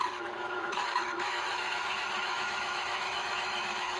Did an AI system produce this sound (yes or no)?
yes